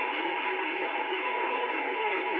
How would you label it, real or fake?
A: fake